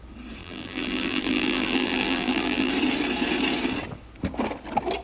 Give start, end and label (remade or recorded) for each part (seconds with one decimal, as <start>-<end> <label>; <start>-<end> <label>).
0.0-0.4 recorded; 0.4-2.7 remade; 2.7-5.0 recorded